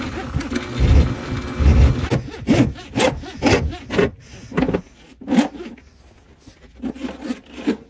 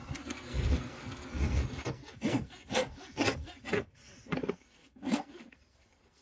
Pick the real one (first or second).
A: first